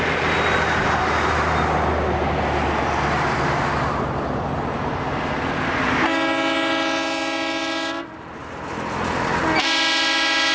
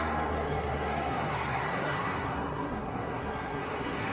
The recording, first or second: first